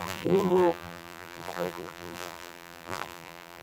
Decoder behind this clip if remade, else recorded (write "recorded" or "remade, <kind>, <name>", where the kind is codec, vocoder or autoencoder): remade, vocoder, BigVGAN v2